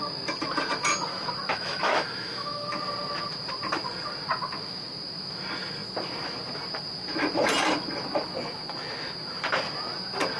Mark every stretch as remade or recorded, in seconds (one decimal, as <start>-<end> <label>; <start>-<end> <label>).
0.0-1.5 recorded; 1.5-2.7 remade; 2.7-10.4 recorded